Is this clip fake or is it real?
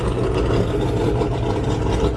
real